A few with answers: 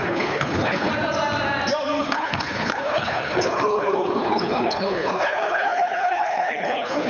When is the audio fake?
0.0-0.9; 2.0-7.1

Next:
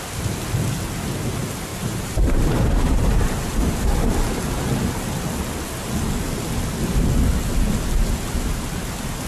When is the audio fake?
1.7-4.4

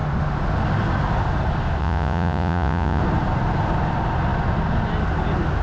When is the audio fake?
1.8-3.0

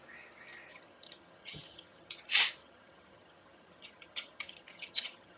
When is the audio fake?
0.7-2.2; 2.6-5.4